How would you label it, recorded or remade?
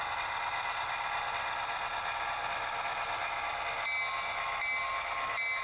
recorded